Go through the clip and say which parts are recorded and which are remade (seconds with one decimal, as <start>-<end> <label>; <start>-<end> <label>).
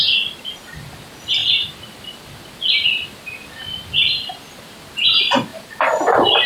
0.0-1.4 recorded; 1.4-4.8 remade; 4.8-5.5 recorded; 5.5-6.5 remade